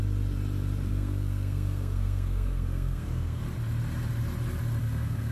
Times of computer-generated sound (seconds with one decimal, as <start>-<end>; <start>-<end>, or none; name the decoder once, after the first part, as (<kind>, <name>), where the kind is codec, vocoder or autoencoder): 0.9-3.4 (codec, SNAC); 4.8-5.3